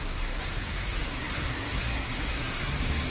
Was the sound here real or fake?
fake